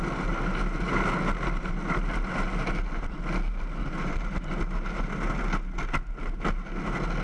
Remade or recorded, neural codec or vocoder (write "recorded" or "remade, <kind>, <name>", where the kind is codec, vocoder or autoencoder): recorded